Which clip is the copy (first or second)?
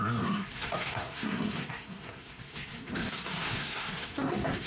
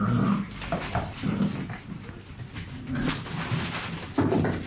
first